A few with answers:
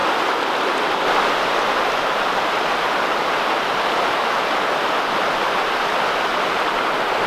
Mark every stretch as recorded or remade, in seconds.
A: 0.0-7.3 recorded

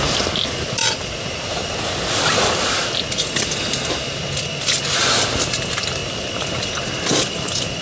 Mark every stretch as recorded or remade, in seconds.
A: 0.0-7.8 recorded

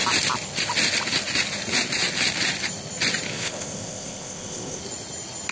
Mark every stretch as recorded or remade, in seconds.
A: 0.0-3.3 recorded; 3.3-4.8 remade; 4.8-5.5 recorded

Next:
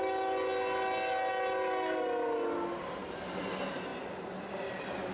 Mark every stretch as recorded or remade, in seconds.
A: 0.0-5.1 recorded

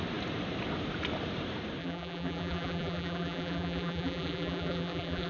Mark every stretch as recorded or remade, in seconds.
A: 0.0-1.8 recorded; 1.8-5.3 remade

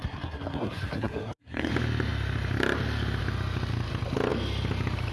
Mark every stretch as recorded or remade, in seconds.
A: 0.0-1.7 remade; 1.7-5.1 recorded